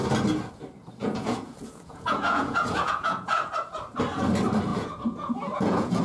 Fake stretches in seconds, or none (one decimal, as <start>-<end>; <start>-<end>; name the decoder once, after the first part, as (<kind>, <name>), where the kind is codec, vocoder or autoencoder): 1.0-3.5 (vocoder, Vocos); 4.7-6.0